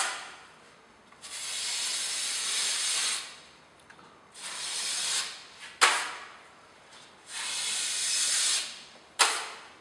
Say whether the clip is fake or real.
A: real